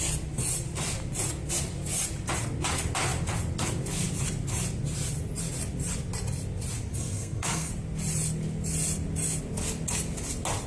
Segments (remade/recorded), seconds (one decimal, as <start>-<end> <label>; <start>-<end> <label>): 0.0-6.9 recorded; 6.9-7.7 remade; 7.7-10.7 recorded